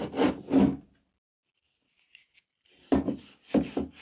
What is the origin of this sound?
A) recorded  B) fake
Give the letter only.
A